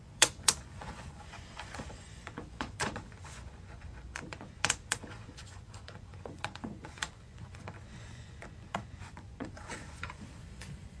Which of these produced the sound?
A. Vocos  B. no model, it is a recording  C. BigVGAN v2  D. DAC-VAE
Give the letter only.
A